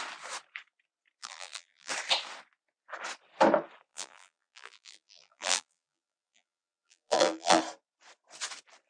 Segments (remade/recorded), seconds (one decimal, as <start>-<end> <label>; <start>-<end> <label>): 0.0-1.2 recorded; 1.2-1.9 remade; 1.9-3.9 recorded; 3.9-7.6 remade; 7.6-8.9 recorded